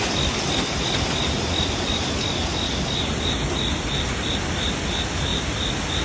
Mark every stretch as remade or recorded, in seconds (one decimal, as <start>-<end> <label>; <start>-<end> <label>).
0.0-6.0 recorded